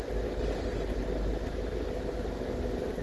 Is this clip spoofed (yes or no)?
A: no